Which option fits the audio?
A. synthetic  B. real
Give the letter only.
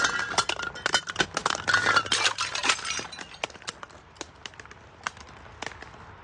B